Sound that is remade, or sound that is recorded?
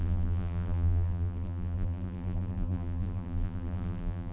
remade